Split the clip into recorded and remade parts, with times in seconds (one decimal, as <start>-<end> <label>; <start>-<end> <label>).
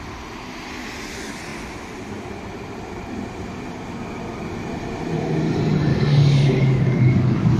0.0-5.9 recorded; 5.9-7.6 remade